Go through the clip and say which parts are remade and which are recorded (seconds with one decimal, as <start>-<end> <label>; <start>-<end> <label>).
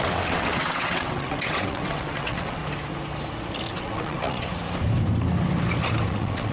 0.0-2.6 remade; 2.6-3.7 recorded; 3.7-4.5 remade; 4.5-6.1 recorded; 6.1-6.5 remade